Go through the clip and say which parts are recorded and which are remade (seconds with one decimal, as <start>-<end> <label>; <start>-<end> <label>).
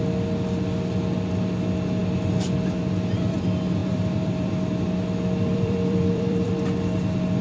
0.0-3.8 recorded; 3.8-4.5 remade; 4.5-5.5 recorded; 5.5-6.6 remade; 6.6-7.4 recorded